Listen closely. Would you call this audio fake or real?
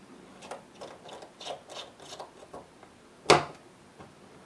real